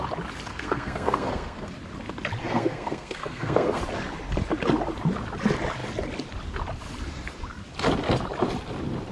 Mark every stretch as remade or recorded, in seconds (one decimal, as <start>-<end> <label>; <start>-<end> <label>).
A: 0.0-0.5 recorded; 0.5-1.7 remade; 1.7-2.4 recorded; 2.4-3.8 remade; 3.8-9.1 recorded